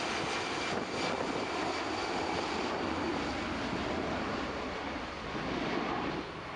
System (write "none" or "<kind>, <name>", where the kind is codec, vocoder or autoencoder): none